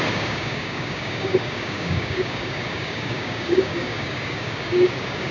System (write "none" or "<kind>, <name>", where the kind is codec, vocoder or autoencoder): codec, DAC